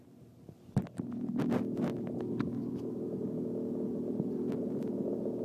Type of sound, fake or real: real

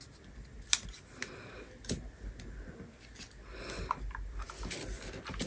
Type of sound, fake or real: real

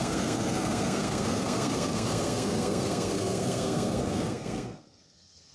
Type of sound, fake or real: fake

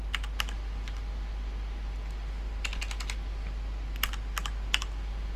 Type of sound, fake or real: real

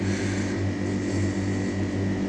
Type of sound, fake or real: real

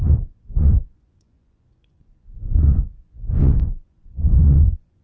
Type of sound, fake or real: fake